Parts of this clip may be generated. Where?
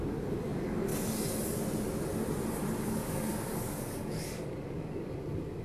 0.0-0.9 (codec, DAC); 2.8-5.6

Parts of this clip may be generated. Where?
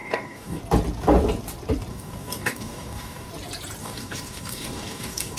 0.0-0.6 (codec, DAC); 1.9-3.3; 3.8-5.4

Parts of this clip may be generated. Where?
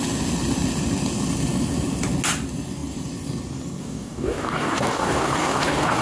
3.8-6.0 (codec, DAC)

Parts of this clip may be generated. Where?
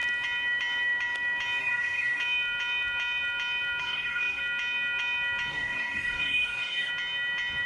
1.6-2.2 (codec, DAC); 3.8-4.4; 5.5-6.9